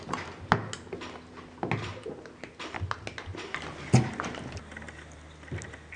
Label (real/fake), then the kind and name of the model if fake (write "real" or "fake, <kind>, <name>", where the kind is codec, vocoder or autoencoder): real